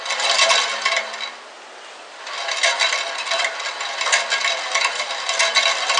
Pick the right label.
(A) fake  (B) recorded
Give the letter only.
B